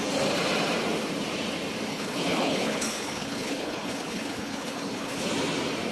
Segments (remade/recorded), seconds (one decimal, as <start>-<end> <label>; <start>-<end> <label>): 0.0-1.9 recorded; 1.9-5.3 remade; 5.3-5.9 recorded